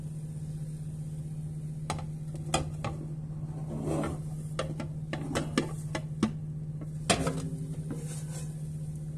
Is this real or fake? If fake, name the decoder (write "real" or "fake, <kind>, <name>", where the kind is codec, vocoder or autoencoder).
real